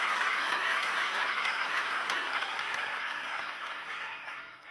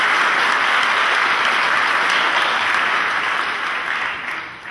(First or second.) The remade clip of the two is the first